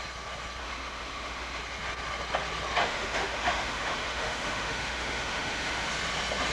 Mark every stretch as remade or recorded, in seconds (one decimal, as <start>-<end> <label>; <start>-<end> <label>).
0.0-0.6 recorded; 0.6-1.6 remade; 1.6-2.8 recorded; 2.8-5.9 remade; 5.9-6.5 recorded